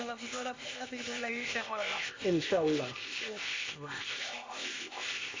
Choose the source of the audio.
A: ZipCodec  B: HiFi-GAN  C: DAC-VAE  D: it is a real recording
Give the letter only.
A